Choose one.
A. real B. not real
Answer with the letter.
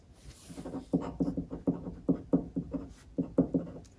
A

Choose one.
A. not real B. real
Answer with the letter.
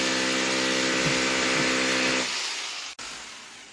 B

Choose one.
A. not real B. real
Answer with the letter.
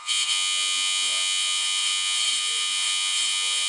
A